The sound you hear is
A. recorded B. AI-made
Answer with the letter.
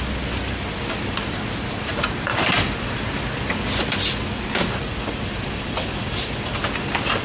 A